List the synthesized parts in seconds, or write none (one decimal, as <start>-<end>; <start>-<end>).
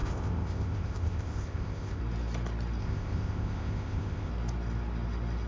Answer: 0.0-2.0; 2.8-4.3